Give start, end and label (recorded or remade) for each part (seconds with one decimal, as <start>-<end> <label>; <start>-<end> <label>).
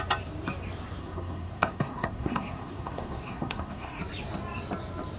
0.0-1.0 recorded; 1.0-4.0 remade; 4.0-5.2 recorded